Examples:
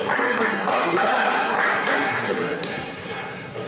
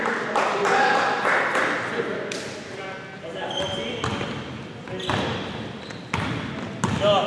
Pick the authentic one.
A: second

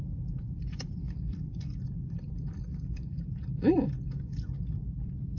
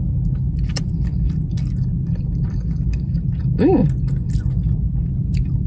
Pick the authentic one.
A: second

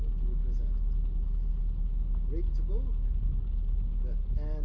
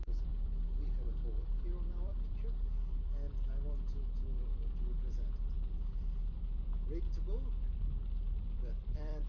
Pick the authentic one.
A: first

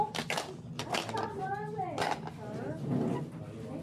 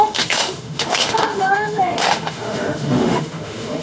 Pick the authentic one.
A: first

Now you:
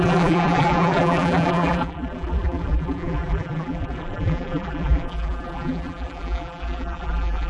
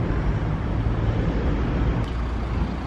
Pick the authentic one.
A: second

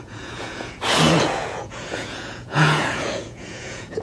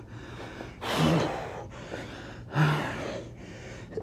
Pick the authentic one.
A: second